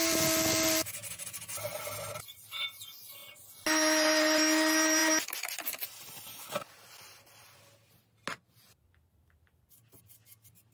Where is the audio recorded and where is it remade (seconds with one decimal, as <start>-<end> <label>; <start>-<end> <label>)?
0.0-1.0 recorded; 1.0-1.7 remade; 1.7-10.7 recorded